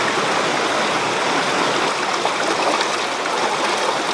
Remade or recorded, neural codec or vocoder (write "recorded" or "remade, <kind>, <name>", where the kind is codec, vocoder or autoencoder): recorded